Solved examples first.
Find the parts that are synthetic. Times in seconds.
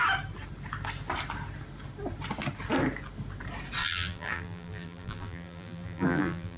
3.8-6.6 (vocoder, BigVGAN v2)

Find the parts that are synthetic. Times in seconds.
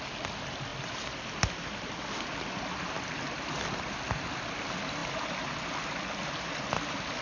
none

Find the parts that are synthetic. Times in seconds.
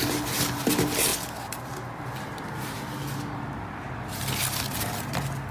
none